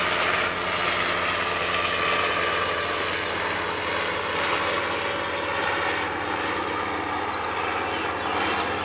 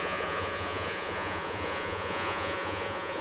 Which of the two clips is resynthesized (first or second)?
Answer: second